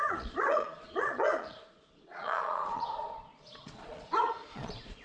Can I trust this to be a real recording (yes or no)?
no